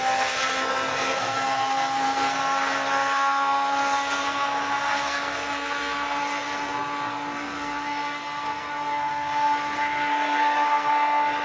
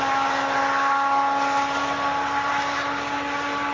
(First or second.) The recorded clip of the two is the second